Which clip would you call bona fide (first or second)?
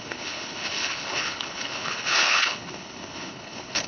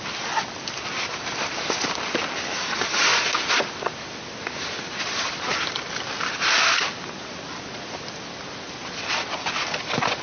second